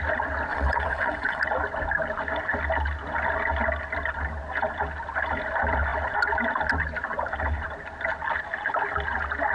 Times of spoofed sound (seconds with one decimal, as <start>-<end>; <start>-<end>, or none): 0.5-1.4